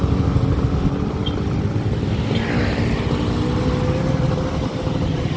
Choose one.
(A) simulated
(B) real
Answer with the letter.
B